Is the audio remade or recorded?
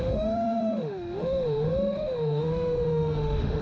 remade